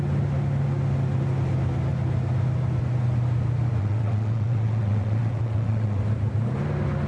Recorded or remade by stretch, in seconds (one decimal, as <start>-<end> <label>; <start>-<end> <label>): 0.0-3.8 recorded; 3.8-6.0 remade; 6.0-7.1 recorded